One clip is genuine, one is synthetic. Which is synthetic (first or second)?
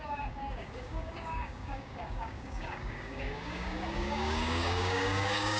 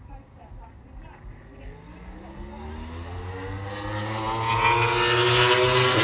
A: first